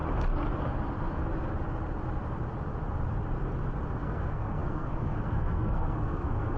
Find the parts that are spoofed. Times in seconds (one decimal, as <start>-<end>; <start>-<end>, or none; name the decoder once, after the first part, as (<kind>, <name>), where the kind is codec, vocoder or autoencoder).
4.0-6.6 (codec, SNAC)